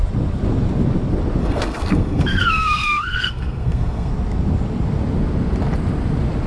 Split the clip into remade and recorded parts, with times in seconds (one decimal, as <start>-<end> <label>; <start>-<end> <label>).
0.0-1.4 recorded; 1.4-4.1 remade; 4.1-6.5 recorded